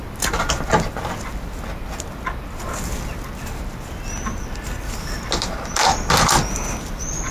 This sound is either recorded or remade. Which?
recorded